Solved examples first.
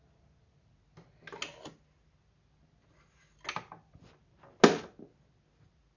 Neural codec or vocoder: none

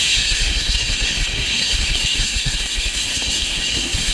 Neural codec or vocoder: codec, SNAC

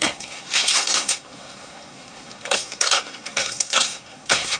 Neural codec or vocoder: codec, SNAC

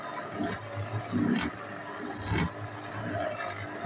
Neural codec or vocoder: none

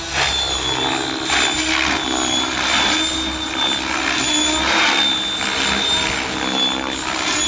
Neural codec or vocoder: none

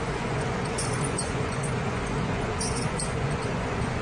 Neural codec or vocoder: vocoder, Vocos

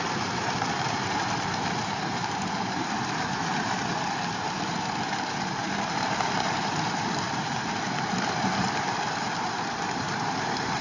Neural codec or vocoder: vocoder, BigVGAN v2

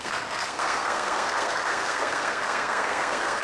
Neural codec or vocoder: codec, SNAC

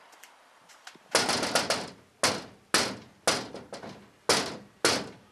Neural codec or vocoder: none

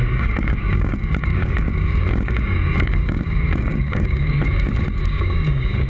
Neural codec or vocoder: codec, DAC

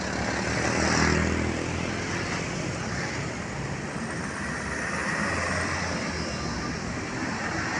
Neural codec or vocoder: none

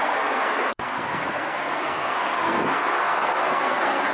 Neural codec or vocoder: codec, SNAC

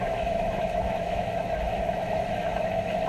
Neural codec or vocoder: autoencoder, DAC-VAE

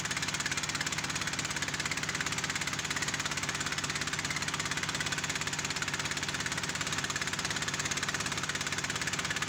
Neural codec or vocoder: none